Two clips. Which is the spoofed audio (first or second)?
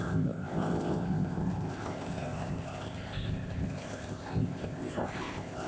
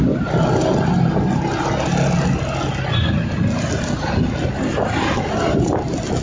first